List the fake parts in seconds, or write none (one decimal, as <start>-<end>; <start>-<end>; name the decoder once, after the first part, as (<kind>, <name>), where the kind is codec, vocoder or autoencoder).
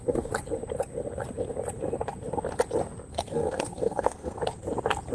3.1-4.4 (codec, SNAC)